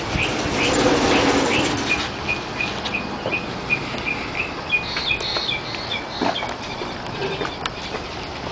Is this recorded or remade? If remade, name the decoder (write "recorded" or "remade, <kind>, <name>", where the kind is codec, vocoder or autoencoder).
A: recorded